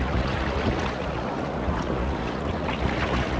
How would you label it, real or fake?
fake